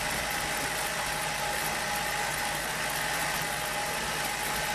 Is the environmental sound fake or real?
real